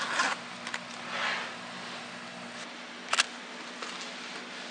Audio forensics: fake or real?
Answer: real